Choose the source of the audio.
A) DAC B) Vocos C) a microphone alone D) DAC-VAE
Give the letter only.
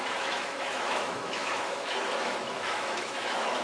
D